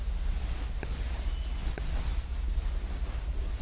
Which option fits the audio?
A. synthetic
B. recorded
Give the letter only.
B